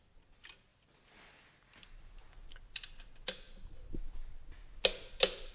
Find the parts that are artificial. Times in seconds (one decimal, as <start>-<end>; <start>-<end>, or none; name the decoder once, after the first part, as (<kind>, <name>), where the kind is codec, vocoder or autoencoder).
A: none